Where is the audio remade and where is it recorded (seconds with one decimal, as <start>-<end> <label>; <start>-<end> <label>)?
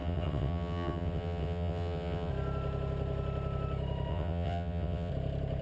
0.0-2.3 remade; 2.3-4.1 recorded; 4.1-5.1 remade; 5.1-5.6 recorded